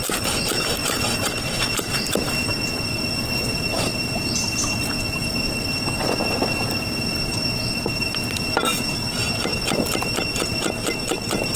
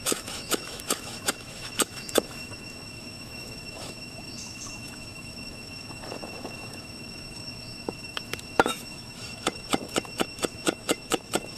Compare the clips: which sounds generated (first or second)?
second